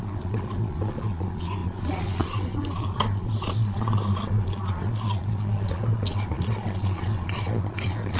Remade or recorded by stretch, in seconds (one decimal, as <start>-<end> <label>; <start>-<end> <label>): 0.0-8.2 remade

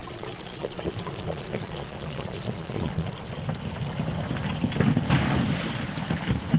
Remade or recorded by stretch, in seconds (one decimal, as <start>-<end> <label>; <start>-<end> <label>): 0.0-3.1 remade; 3.1-6.6 recorded

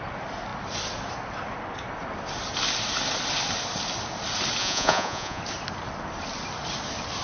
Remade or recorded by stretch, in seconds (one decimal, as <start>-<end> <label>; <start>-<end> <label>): 0.0-4.6 recorded; 4.6-5.4 remade; 5.4-7.2 recorded

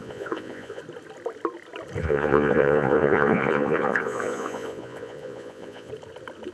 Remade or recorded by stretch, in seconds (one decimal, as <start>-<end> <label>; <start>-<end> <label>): 0.0-0.8 remade; 0.8-2.0 recorded; 2.0-5.9 remade; 5.9-6.5 recorded

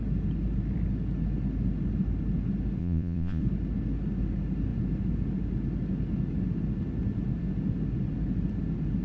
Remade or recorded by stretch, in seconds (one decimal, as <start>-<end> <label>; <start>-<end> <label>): 0.0-2.8 recorded; 2.8-3.4 remade; 3.4-9.0 recorded